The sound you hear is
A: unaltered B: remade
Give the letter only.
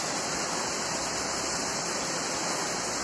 A